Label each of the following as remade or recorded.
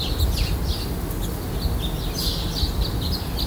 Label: recorded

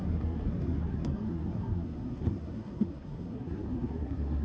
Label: remade